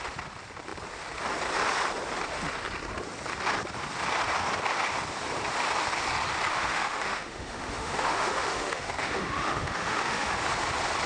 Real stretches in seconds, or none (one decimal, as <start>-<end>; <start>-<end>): 0.0-6.5; 10.3-11.1

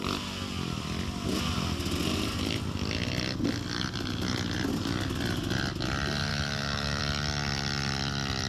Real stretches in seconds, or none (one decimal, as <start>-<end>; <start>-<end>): 0.0-6.3; 7.0-8.5

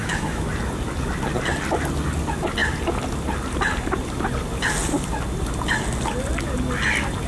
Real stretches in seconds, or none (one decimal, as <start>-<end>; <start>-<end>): 0.5-7.3

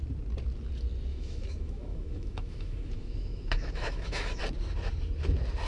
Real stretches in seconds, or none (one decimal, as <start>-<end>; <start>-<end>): 0.0-1.1; 4.4-5.7

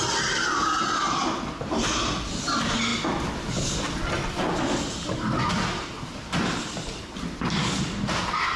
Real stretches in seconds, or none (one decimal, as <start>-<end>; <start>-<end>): 0.0-8.6

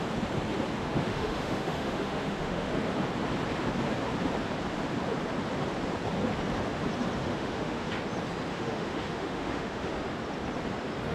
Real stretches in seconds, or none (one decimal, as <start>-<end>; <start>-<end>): 0.0-0.8; 2.7-7.2; 7.9-8.5; 9.9-11.1